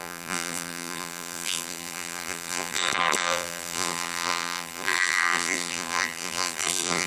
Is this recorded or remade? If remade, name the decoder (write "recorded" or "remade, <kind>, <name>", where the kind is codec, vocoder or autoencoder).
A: remade, vocoder, BigVGAN v2